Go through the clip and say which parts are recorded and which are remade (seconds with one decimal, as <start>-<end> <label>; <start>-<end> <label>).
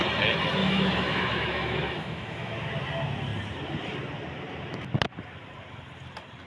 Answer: 0.0-0.6 recorded; 0.6-2.7 remade; 2.7-6.5 recorded